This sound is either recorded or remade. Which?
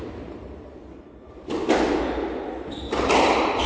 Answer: recorded